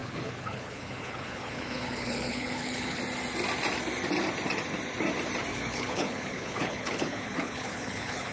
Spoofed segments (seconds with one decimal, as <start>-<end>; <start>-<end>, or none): 0.0-3.0; 5.5-8.3